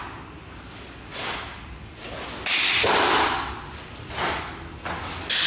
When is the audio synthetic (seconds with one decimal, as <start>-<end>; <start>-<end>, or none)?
none